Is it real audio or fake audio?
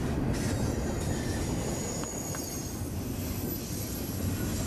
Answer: real